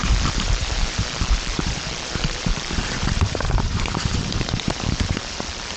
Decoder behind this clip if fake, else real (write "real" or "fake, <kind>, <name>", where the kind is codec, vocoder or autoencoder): fake, vocoder, BigVGAN v2